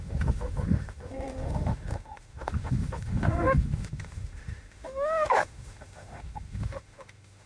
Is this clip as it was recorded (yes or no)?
no